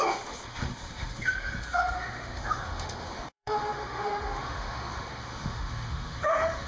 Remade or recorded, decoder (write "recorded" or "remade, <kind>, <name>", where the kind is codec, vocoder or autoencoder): remade, autoencoder, DAC-VAE